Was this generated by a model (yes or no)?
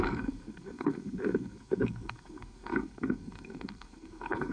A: yes